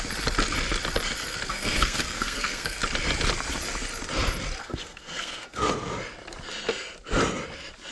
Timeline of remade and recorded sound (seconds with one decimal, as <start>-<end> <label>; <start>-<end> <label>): 0.0-1.5 recorded; 1.5-2.8 remade; 2.8-4.6 recorded; 4.6-5.7 remade; 5.7-7.9 recorded